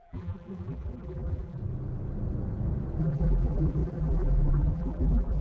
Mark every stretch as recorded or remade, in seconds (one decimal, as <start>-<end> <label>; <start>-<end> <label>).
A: 0.0-1.6 remade; 1.6-3.0 recorded; 3.0-5.4 remade